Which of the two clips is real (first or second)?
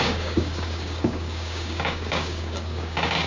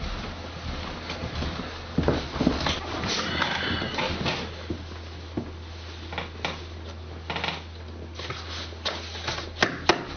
second